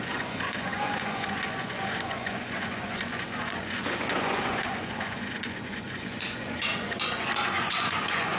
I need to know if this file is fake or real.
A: fake